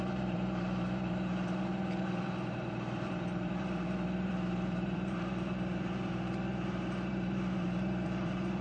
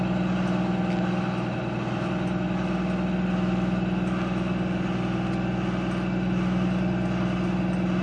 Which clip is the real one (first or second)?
second